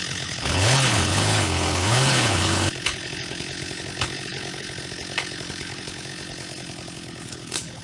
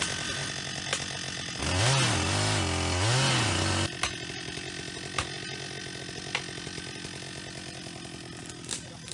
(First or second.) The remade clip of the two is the first